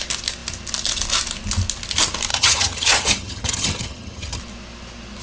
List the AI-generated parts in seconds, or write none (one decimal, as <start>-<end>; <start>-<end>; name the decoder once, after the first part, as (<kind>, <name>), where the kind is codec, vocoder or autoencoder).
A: 2.3-4.4 (vocoder, HiFi-GAN)